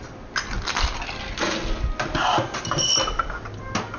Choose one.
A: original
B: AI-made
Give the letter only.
A